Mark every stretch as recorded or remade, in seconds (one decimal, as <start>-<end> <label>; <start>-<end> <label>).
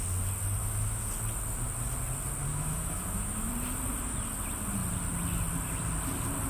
0.0-0.6 recorded; 0.6-1.1 remade; 1.1-2.5 recorded; 2.5-3.5 remade; 3.5-6.5 recorded